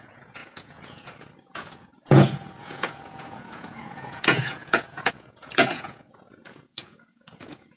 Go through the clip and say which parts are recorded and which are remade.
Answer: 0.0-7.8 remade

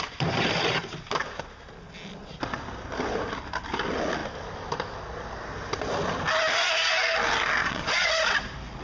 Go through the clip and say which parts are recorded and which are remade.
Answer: 0.0-7.6 recorded; 7.6-8.1 remade; 8.1-8.8 recorded